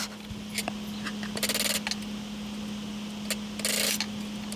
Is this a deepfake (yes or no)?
no